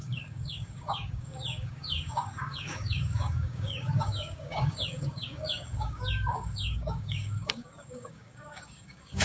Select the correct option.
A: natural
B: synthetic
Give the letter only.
B